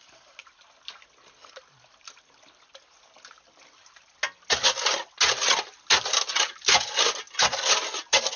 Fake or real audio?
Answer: real